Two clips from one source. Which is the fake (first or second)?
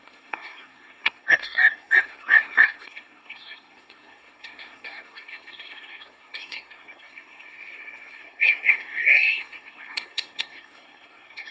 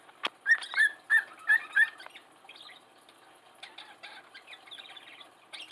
first